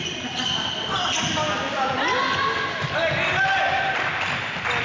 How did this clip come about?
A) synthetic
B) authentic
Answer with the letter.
B